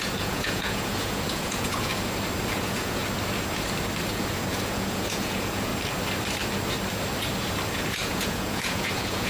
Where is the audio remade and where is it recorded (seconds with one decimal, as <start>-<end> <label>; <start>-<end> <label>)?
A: 0.0-1.9 remade; 1.9-2.6 recorded; 2.6-3.0 remade; 3.0-4.1 recorded; 4.1-5.7 remade; 5.7-7.7 recorded; 7.7-9.3 remade